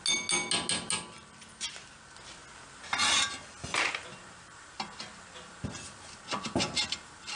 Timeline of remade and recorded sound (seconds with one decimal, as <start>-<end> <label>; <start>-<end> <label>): 0.0-7.4 recorded